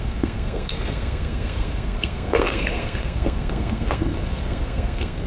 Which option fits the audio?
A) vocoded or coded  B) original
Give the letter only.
A